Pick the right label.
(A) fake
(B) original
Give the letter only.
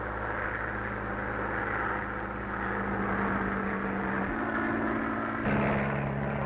B